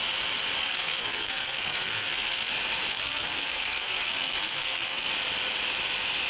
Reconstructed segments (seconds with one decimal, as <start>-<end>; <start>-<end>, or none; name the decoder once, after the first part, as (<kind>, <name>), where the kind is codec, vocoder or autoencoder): 0.6-2.5 (codec, SNAC); 2.9-5.1